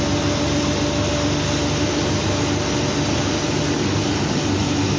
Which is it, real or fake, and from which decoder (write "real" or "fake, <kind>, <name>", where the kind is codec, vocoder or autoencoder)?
real